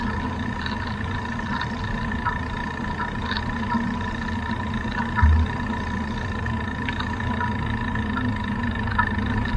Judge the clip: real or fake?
real